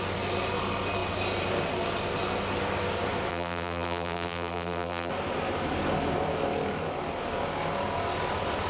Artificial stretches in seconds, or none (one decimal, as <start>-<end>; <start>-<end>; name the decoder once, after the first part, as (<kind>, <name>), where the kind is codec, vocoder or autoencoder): 3.3-5.1 (vocoder, BigVGAN v2)